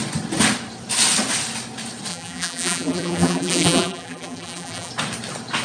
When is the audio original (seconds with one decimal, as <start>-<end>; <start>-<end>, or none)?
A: 0.0-2.1; 4.9-5.6

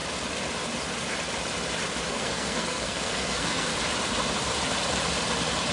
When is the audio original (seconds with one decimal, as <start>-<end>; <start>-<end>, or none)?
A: 0.0-2.1; 3.7-5.7

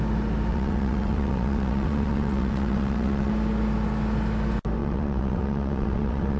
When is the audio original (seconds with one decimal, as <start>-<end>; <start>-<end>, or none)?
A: 0.0-0.5; 3.3-4.8